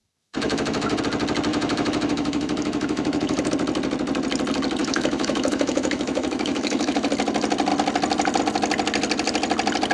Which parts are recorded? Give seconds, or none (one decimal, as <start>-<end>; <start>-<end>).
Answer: 1.0-1.5; 3.5-4.8; 7.1-9.9